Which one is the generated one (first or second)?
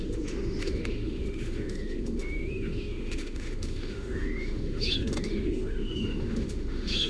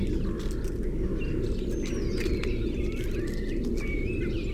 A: first